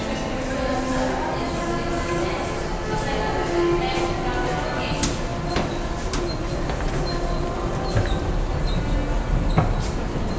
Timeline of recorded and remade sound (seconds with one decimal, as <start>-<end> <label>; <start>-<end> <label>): 0.0-10.4 recorded